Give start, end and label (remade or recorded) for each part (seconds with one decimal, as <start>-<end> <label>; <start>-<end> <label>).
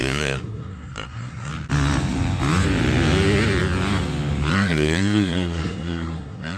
0.0-1.5 remade; 1.5-4.5 recorded; 4.5-6.6 remade